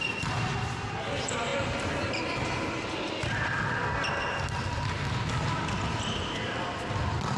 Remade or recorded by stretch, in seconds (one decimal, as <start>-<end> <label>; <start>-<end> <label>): 0.0-7.4 recorded